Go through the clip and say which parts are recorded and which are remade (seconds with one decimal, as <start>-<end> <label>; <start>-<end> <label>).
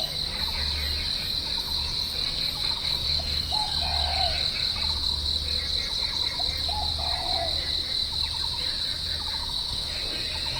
0.0-2.6 recorded; 2.6-3.7 remade; 3.7-9.4 recorded; 9.4-10.0 remade; 10.0-10.6 recorded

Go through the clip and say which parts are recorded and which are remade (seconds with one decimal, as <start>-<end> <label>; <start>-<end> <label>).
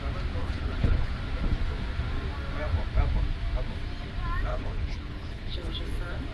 0.0-0.4 recorded; 0.4-1.1 remade; 1.1-4.5 recorded; 4.5-5.7 remade; 5.7-6.3 recorded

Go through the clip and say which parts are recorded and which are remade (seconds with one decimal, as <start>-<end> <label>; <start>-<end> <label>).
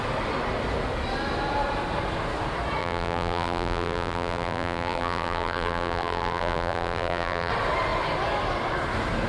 0.0-2.8 recorded; 2.8-7.5 remade; 7.5-9.3 recorded